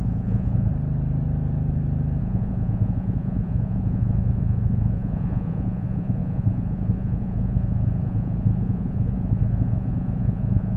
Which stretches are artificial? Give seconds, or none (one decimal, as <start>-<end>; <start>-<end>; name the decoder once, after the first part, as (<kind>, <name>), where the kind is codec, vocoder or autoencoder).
0.0-0.7 (vocoder, Vocos); 2.2-10.8